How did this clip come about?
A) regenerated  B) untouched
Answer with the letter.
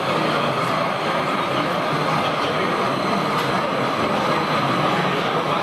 B